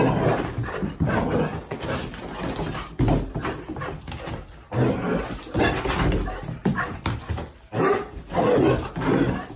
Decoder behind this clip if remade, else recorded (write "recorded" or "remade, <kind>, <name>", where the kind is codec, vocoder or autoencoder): recorded